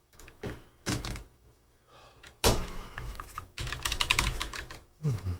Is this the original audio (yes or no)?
no